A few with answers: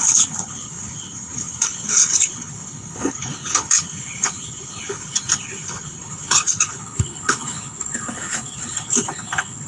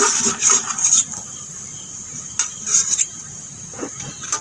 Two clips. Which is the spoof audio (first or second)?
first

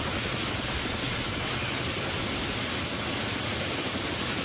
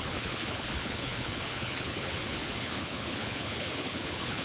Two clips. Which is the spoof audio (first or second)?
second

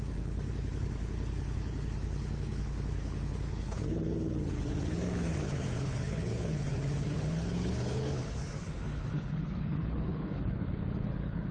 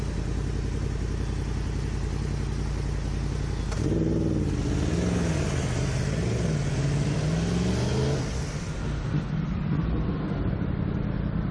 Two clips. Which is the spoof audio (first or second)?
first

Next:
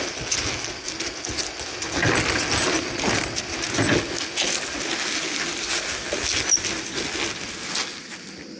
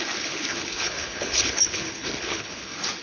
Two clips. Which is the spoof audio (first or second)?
second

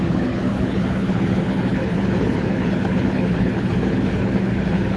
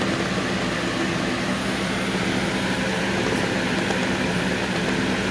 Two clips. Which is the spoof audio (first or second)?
first